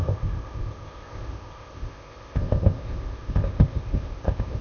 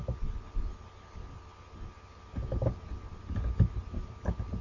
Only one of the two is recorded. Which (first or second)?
second